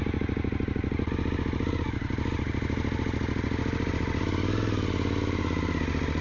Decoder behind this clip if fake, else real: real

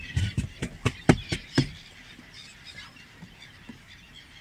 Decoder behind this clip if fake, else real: real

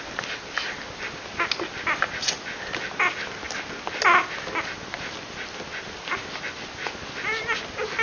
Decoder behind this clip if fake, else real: real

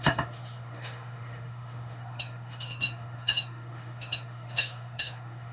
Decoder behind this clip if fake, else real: fake, autoencoder, DAC-VAE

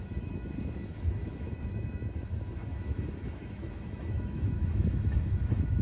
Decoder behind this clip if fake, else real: fake, autoencoder, DAC-VAE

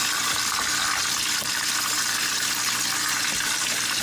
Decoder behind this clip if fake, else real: real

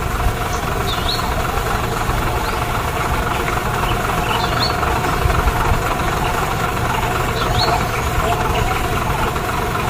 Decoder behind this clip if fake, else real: real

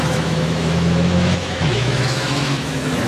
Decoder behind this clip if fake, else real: fake, autoencoder, DAC-VAE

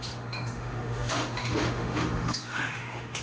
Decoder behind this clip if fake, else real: fake, autoencoder, DAC-VAE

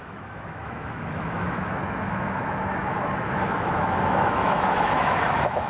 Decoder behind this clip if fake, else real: fake, autoencoder, DAC-VAE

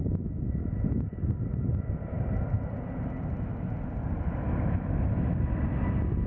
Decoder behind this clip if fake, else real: real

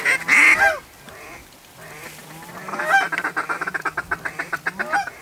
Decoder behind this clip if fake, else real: real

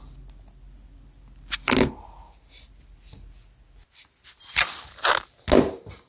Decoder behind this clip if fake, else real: real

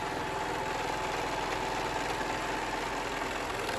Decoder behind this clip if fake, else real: real